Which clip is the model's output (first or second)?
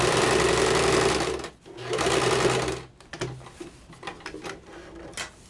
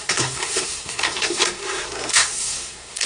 second